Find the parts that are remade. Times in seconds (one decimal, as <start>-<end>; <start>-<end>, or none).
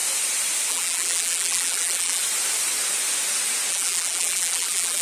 0.7-2.2; 3.7-5.0